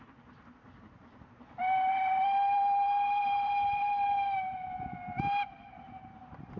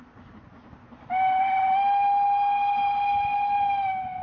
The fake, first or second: first